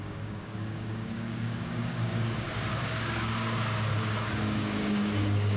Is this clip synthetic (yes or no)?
yes